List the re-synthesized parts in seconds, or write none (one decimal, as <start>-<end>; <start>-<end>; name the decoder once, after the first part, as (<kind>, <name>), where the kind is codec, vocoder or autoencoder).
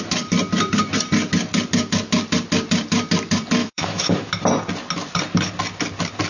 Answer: 3.6-4.3 (autoencoder, DAC-VAE)